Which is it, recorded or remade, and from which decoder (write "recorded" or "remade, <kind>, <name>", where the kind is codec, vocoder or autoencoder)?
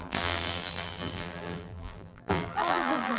remade, vocoder, BigVGAN v2